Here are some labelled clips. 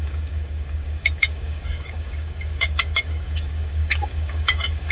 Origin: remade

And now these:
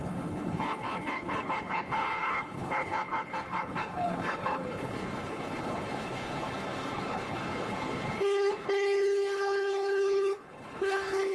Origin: remade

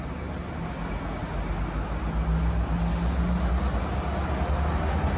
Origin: recorded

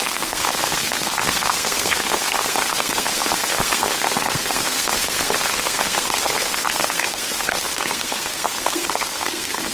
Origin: remade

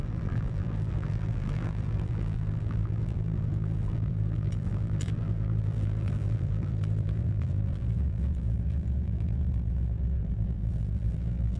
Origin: remade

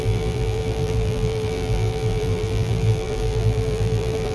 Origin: remade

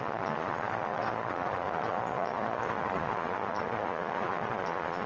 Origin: remade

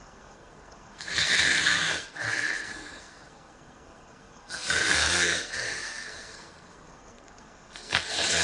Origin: remade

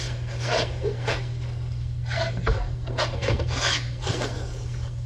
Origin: remade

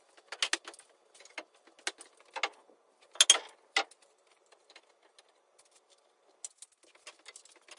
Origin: recorded